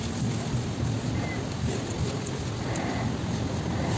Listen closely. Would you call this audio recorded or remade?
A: recorded